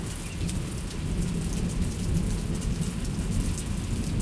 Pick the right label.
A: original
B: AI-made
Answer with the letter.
B